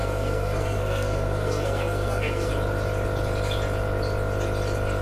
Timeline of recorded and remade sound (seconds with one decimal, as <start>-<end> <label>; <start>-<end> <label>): 0.0-2.5 remade; 2.5-5.0 recorded